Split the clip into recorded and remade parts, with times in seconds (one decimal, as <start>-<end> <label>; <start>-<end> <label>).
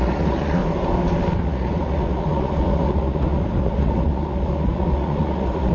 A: 0.0-0.6 remade; 0.6-1.4 recorded; 1.4-5.7 remade